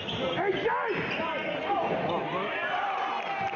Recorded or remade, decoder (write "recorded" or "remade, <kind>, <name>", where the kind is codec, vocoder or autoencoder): recorded